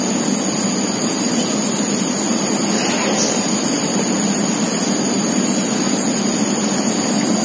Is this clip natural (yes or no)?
yes